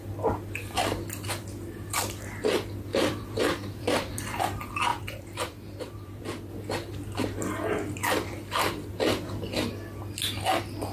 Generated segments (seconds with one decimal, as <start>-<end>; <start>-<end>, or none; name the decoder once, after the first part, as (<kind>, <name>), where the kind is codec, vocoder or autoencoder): 2.9-4.4 (vocoder, BigVGAN v2); 4.9-6.5